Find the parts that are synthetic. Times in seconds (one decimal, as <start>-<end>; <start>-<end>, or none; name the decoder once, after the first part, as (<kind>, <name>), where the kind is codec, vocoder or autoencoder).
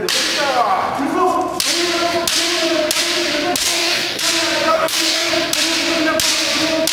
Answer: 3.6-4.2 (codec, DAC); 4.7-5.3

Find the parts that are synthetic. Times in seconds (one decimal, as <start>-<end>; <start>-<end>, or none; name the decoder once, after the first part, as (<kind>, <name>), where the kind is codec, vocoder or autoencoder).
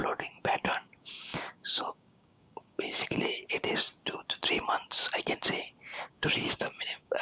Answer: 0.0-3.4 (codec, DAC); 6.0-7.2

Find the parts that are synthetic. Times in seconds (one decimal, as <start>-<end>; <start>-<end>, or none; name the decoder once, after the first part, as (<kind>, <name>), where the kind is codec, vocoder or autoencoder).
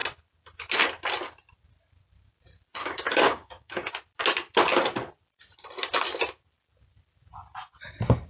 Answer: 2.8-3.9 (codec, DAC)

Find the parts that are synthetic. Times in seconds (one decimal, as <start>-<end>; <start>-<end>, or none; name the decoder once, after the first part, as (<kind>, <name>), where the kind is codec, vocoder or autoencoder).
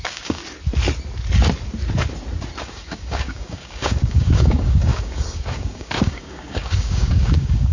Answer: 0.0-0.4 (codec, DAC); 2.6-7.7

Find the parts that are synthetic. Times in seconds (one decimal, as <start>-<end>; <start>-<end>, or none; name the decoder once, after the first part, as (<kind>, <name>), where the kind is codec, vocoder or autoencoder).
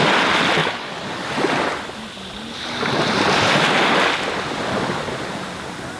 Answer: 0.6-1.3 (codec, DAC)